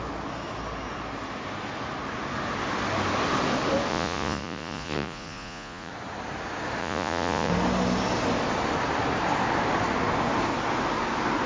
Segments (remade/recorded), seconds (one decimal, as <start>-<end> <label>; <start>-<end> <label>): 0.0-3.9 recorded; 3.9-5.9 remade; 5.9-6.8 recorded; 6.8-7.5 remade; 7.5-11.5 recorded